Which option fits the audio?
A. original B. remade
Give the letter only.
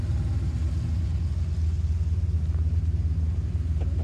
A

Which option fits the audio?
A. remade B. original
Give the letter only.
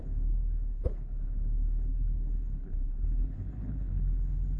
A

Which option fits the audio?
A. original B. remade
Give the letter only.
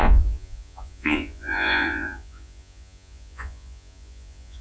B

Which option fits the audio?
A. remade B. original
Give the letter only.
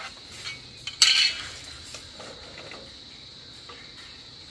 B